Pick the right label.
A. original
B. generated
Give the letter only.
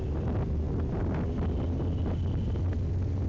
A